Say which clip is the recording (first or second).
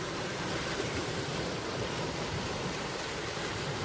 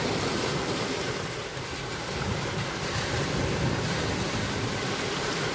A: second